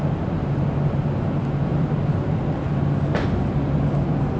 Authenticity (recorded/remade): recorded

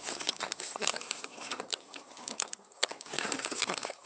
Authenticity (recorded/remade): remade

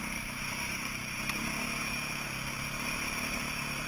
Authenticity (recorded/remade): remade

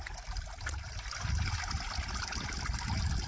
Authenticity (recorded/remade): remade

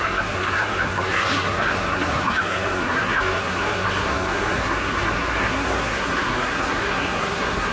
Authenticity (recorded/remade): remade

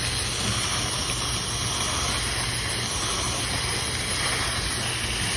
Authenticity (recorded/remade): recorded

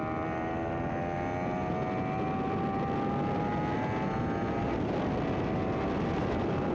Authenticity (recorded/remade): recorded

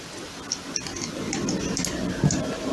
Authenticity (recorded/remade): recorded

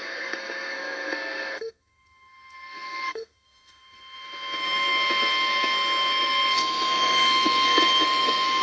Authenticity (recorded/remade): remade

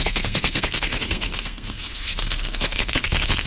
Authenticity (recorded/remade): remade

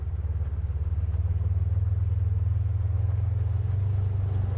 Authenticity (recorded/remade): recorded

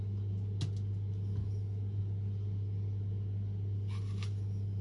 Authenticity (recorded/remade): recorded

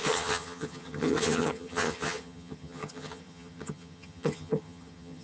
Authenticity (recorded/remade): remade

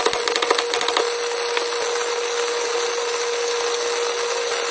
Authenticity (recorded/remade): recorded